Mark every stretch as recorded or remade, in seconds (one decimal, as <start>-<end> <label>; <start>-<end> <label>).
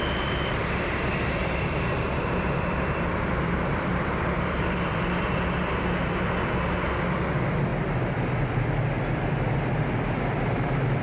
0.0-1.4 recorded; 1.4-5.8 remade; 5.8-7.7 recorded; 7.7-10.6 remade; 10.6-11.0 recorded